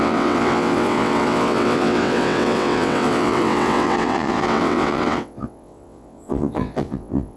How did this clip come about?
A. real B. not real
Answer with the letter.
B